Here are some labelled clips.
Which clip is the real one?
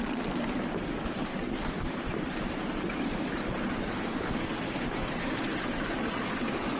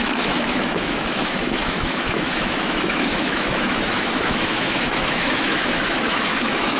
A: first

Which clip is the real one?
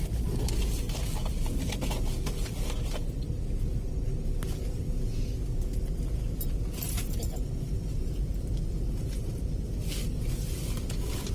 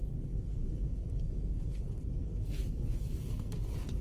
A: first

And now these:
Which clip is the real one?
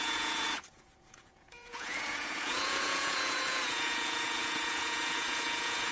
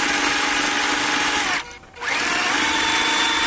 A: second